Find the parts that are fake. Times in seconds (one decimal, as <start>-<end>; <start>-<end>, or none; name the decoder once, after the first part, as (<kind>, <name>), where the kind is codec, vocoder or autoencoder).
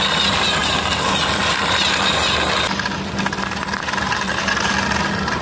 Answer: none